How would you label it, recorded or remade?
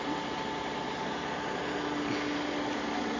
recorded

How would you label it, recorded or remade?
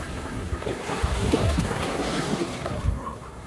remade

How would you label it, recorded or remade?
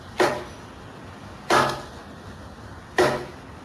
recorded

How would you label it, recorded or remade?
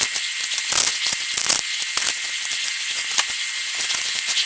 recorded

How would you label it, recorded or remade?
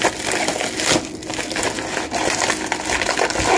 recorded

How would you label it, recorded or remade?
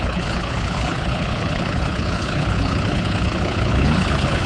remade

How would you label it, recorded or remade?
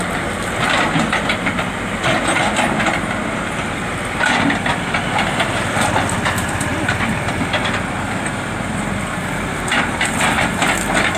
recorded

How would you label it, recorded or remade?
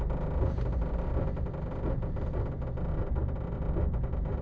recorded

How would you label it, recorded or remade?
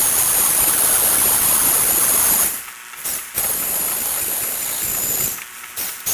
remade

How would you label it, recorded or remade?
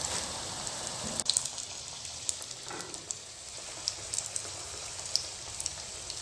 remade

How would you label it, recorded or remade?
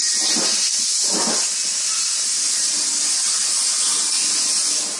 recorded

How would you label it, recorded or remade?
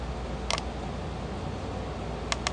recorded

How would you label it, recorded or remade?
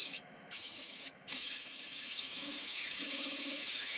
remade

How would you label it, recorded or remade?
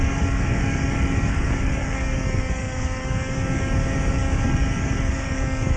remade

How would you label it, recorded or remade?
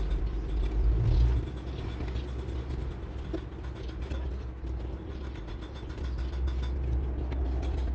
recorded